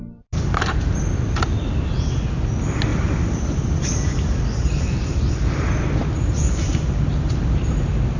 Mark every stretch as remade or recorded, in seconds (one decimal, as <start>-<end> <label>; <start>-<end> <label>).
0.0-2.9 recorded; 2.9-5.3 remade; 5.3-6.0 recorded; 6.0-7.6 remade; 7.6-8.2 recorded